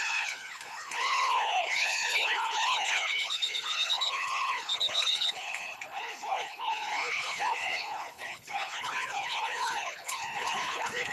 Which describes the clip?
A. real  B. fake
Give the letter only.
B